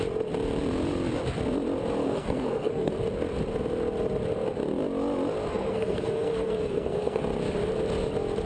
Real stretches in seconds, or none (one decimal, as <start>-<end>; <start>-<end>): 0.0-2.0; 2.9-5.5; 7.2-8.5